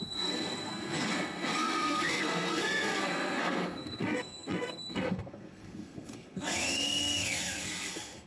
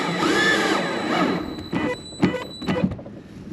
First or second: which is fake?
first